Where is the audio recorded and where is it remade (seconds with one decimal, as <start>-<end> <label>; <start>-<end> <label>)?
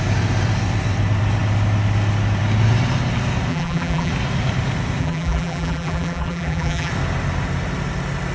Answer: 0.0-3.5 recorded; 3.5-4.1 remade; 4.1-5.0 recorded; 5.0-6.9 remade; 6.9-8.3 recorded